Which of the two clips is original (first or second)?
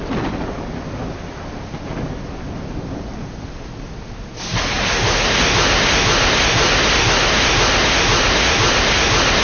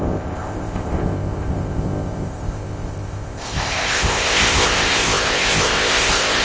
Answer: first